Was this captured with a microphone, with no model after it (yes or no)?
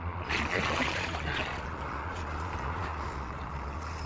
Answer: no